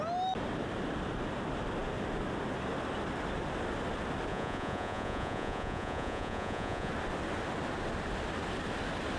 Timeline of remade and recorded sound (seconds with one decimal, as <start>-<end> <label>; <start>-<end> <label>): 0.0-4.3 recorded; 4.3-6.9 remade; 6.9-9.2 recorded